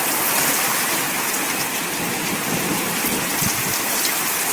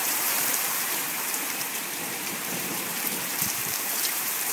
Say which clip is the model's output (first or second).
second